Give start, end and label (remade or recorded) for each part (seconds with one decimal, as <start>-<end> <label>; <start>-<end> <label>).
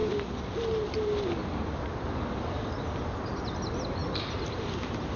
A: 0.0-5.2 recorded